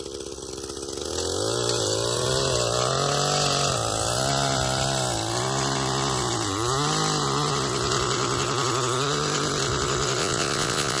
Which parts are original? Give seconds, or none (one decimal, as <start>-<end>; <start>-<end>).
0.0-10.2